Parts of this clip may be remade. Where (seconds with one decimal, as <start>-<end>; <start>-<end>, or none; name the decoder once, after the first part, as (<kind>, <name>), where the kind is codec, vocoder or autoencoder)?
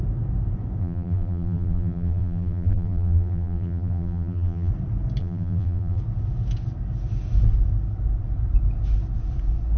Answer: 0.8-4.7 (vocoder, BigVGAN v2); 5.2-6.0